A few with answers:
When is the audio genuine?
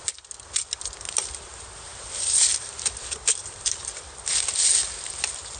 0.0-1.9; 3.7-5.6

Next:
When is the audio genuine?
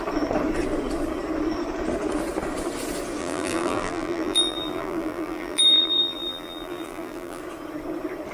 0.0-3.2; 7.4-8.3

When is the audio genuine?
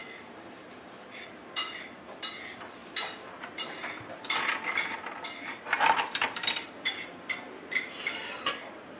2.3-2.8; 4.4-5.5; 7.8-9.0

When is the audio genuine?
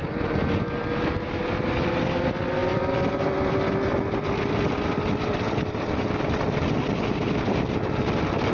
0.0-2.6; 7.7-8.5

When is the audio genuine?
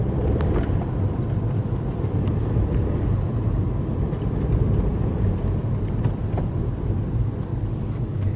4.9-5.6; 7.5-8.4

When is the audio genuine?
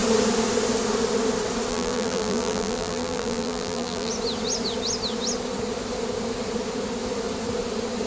0.0-1.7; 4.1-8.1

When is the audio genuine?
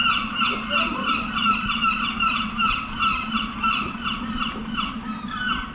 1.1-1.5; 4.3-5.7